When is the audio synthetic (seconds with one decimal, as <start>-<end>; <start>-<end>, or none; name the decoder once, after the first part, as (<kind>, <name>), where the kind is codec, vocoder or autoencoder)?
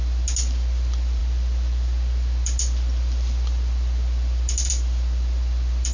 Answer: none